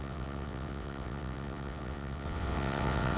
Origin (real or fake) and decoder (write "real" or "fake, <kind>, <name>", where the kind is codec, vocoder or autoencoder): fake, vocoder, WaveNeXt